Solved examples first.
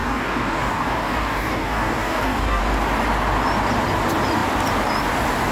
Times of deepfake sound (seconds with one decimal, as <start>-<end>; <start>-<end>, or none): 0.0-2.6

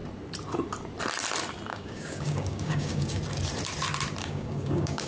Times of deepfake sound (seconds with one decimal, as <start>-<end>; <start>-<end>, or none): 1.7-3.2; 4.2-5.1

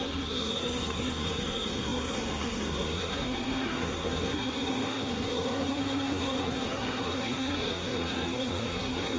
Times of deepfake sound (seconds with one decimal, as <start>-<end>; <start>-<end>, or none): 0.0-9.2

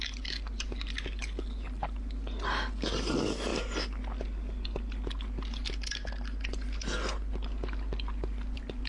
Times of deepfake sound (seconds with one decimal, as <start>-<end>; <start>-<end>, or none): none

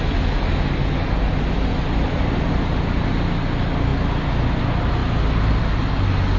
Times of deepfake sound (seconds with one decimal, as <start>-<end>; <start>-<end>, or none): none